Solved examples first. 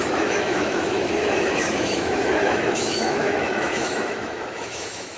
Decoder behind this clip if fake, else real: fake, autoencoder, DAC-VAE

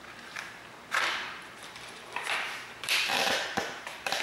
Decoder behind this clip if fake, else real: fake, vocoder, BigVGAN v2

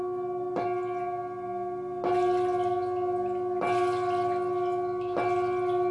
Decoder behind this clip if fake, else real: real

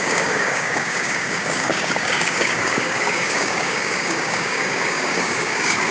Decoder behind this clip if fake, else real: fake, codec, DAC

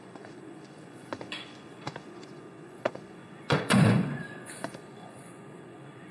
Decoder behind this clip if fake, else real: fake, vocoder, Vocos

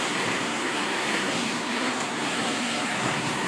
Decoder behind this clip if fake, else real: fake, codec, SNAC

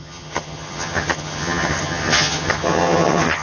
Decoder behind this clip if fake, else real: fake, vocoder, HiFi-GAN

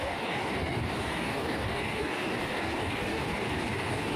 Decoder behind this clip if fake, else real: fake, codec, DAC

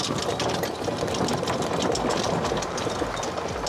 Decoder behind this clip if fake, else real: real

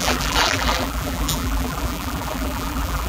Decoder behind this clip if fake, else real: fake, vocoder, BigVGAN v2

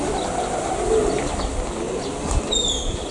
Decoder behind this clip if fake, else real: real